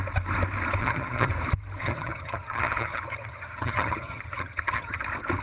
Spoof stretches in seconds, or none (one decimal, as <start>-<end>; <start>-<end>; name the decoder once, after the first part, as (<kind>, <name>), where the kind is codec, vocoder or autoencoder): 0.8-1.3 (vocoder, HiFi-GAN); 1.8-5.0